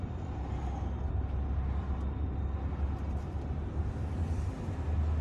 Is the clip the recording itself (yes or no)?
yes